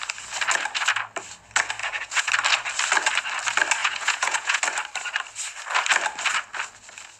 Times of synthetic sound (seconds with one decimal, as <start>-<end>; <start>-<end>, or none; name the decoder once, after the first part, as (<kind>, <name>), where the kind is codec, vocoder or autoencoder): 1.8-2.3 (vocoder, Vocos); 3.8-4.6